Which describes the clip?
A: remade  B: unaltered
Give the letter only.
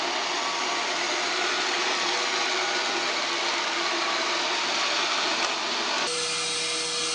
B